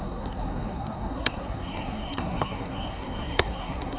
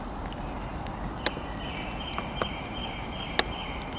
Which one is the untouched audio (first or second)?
second